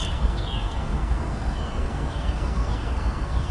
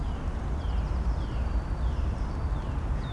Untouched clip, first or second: second